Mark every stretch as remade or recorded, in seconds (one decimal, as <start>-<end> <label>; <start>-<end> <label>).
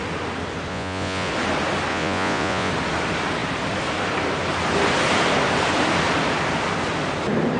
0.0-0.7 recorded; 0.7-1.3 remade; 1.3-1.9 recorded; 1.9-2.7 remade; 2.7-7.6 recorded